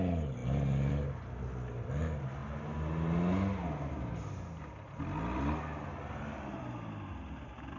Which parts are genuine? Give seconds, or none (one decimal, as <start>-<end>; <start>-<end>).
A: 0.0-7.8